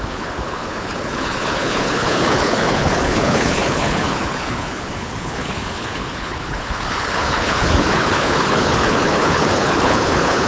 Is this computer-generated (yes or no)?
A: yes